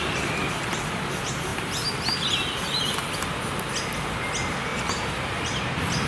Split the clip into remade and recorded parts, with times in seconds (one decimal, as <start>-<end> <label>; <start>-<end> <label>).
0.0-4.7 recorded; 4.7-6.1 remade

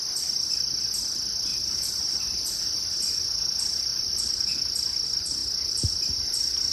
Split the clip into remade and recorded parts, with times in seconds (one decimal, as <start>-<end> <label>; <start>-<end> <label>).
0.0-1.5 recorded; 1.5-2.9 remade; 2.9-3.9 recorded; 3.9-4.5 remade; 4.5-6.7 recorded

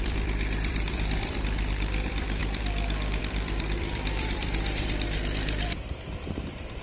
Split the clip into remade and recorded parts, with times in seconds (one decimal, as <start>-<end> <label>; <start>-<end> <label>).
0.0-6.8 remade

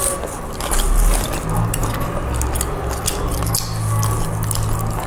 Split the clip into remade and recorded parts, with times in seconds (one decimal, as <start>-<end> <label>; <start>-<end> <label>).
0.0-5.1 recorded